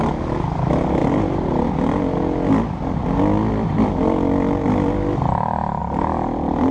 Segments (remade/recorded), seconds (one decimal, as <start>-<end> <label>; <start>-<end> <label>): 0.0-6.7 recorded